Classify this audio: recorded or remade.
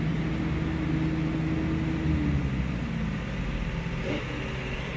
recorded